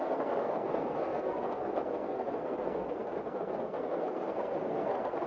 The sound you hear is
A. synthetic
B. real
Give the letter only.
A